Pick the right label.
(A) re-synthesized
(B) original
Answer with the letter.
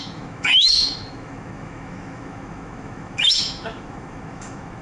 A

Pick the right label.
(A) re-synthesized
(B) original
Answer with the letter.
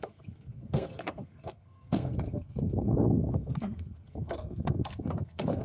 A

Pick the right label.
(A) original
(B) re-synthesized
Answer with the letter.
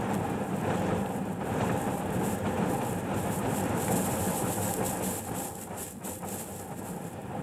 A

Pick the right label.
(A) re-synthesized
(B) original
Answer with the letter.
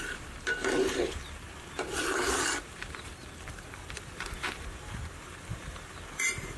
A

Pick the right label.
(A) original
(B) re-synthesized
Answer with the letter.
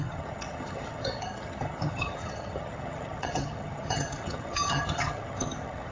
B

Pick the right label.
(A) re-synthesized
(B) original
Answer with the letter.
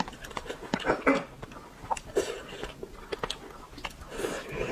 B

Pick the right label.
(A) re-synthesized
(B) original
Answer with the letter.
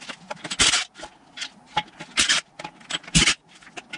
B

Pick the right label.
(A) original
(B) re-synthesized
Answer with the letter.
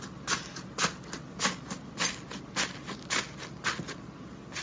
A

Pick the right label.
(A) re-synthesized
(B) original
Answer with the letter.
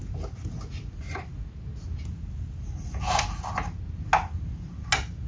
B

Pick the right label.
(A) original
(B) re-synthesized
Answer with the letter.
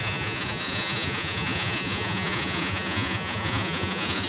B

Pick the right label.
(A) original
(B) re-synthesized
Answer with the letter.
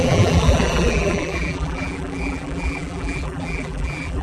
B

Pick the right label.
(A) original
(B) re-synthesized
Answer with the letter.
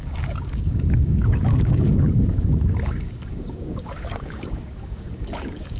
B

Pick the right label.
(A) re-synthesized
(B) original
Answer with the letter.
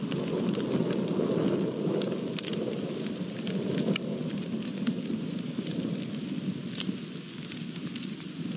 B